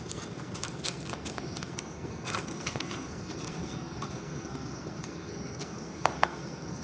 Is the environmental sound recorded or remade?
remade